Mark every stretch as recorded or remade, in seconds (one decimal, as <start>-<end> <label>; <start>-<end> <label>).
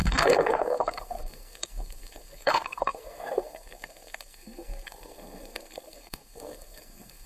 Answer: 0.0-7.3 remade